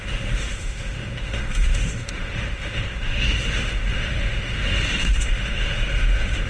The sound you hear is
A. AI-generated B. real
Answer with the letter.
A